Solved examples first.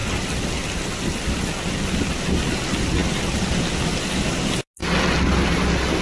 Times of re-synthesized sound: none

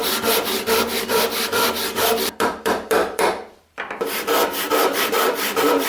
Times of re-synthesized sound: 0.0-5.9 (vocoder, BigVGAN v2)